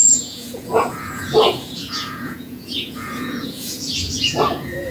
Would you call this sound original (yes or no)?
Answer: no